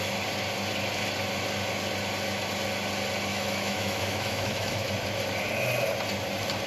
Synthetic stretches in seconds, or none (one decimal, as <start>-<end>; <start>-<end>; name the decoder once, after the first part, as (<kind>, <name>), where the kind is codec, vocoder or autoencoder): 3.3-4.9 (autoencoder, DAC-VAE)